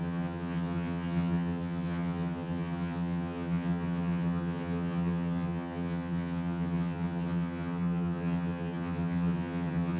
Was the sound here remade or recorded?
remade